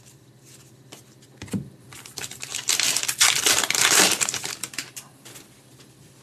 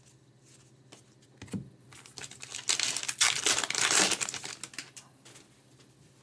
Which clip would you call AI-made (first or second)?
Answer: first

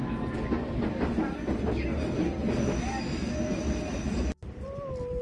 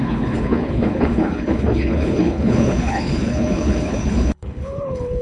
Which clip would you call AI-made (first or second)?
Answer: second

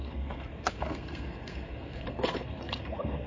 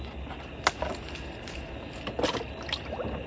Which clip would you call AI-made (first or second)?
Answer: first